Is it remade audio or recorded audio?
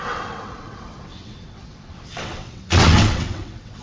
remade